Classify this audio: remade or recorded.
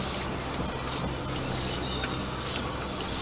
recorded